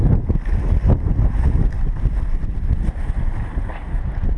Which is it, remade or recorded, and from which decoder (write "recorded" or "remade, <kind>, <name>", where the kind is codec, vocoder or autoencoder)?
recorded